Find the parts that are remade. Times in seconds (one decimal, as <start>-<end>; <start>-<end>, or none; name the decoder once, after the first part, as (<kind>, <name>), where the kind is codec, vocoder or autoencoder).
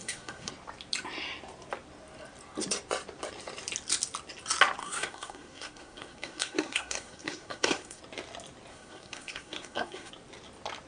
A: 0.0-0.5 (codec, SNAC); 4.8-8.0; 8.7-10.1